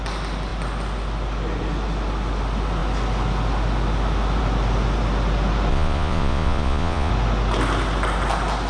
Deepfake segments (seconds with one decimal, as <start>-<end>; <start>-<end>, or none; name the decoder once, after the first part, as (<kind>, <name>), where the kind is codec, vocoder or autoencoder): 5.7-7.1 (vocoder, Vocos)